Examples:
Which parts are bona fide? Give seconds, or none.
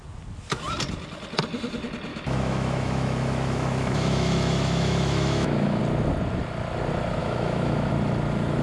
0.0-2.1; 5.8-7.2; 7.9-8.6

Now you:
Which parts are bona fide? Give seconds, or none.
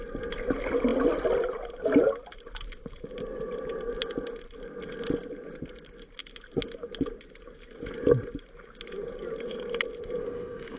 0.0-10.2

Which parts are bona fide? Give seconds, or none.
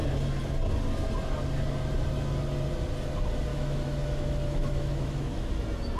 0.0-3.5; 5.5-6.0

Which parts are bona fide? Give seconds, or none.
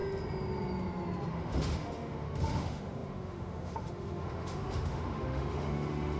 0.0-1.3